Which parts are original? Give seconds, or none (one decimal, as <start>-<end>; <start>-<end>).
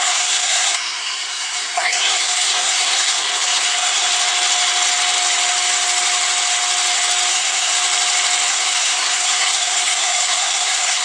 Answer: 4.1-7.3; 7.7-8.5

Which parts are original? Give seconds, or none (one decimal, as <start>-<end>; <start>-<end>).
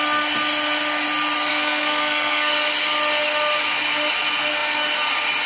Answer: 0.0-1.5; 2.5-5.5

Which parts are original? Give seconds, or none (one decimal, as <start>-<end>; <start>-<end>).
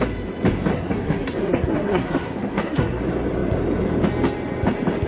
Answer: 0.0-0.7; 3.0-5.1